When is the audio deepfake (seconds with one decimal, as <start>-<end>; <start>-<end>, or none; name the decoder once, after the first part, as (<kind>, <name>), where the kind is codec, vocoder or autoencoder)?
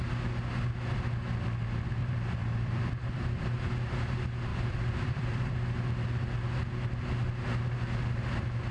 2.0-3.6 (vocoder, BigVGAN v2); 4.5-5.5